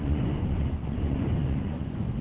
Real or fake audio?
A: fake